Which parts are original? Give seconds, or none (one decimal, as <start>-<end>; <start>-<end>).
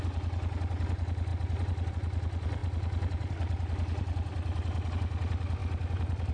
0.0-6.3